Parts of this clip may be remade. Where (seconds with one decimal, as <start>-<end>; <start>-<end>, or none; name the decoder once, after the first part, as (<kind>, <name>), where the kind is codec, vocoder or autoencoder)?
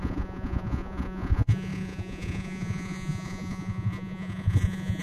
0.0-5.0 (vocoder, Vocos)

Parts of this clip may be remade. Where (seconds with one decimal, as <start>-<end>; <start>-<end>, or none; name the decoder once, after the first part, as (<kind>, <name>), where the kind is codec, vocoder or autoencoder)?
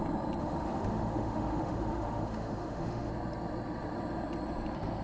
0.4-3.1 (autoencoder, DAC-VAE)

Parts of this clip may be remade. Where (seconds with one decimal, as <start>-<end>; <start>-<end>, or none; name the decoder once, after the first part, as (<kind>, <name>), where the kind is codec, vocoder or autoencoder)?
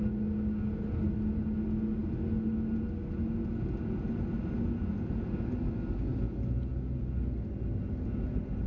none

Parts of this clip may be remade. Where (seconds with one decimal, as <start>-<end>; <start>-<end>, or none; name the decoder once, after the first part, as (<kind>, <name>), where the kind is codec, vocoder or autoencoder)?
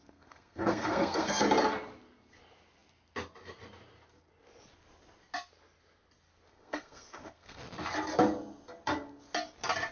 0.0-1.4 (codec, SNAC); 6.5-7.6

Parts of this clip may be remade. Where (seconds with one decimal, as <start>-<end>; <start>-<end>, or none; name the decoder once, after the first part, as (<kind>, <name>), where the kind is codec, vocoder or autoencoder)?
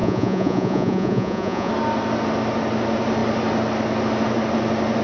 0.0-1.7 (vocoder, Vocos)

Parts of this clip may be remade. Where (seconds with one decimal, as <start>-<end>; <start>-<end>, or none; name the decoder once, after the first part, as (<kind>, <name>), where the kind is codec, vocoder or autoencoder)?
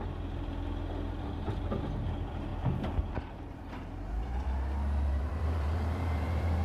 0.0-6.6 (vocoder, BigVGAN v2)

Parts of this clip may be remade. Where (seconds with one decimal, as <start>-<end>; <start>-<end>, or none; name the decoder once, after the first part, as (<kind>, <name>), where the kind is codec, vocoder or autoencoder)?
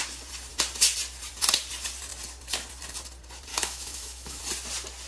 3.5-4.4 (autoencoder, DAC-VAE)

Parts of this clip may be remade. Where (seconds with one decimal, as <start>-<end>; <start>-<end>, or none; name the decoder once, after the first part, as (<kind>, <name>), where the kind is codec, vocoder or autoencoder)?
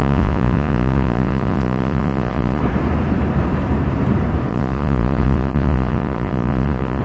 0.0-2.6 (vocoder, Vocos); 4.5-7.0